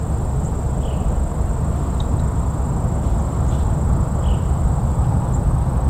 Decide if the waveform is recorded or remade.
remade